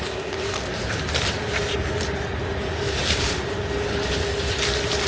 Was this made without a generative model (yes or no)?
yes